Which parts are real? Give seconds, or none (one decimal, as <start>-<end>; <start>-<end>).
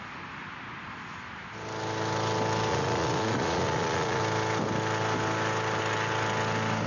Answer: 0.0-2.7; 4.2-6.9